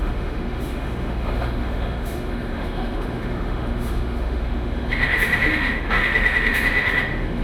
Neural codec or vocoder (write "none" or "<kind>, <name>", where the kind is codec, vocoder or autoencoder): autoencoder, DAC-VAE